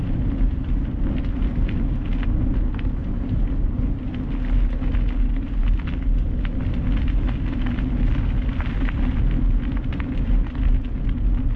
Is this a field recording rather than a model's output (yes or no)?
yes